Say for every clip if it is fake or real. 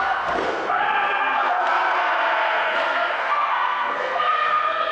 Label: fake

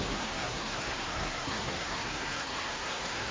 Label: fake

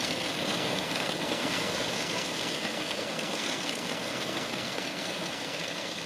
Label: fake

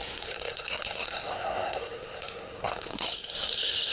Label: fake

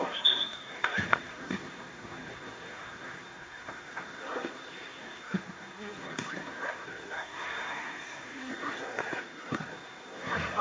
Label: fake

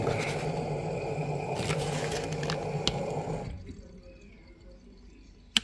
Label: real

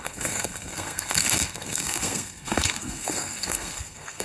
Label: fake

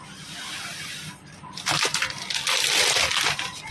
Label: real